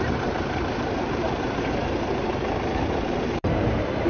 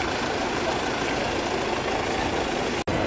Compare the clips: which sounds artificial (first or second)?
first